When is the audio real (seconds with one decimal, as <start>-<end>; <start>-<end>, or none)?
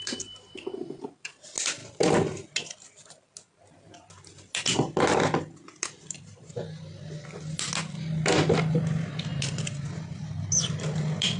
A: 0.0-11.4